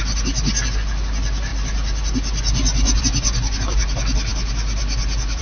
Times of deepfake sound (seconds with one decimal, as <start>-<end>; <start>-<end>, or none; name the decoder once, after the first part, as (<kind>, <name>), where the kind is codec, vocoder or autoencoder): none